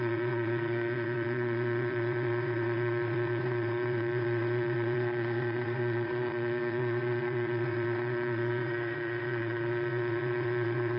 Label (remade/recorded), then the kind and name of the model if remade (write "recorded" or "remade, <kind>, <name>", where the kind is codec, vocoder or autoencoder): remade, vocoder, WaveNeXt